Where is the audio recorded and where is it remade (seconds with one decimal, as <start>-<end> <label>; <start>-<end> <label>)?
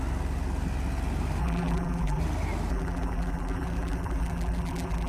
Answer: 0.0-1.4 recorded; 1.4-2.2 remade; 2.2-2.7 recorded; 2.7-5.1 remade